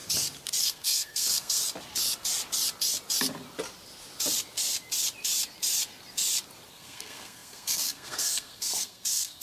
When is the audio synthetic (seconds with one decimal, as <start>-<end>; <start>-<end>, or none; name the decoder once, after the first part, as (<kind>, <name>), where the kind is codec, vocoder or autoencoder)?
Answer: 0.6-1.6 (codec, SNAC); 6.7-9.4